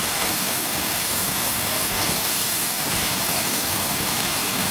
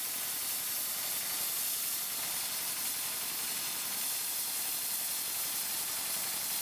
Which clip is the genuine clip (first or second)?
second